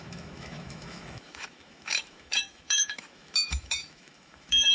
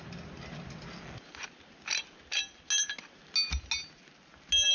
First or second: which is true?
second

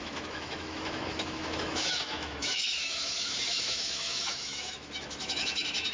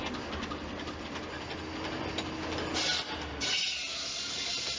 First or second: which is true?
second